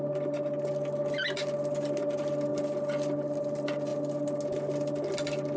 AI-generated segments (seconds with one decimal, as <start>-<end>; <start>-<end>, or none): none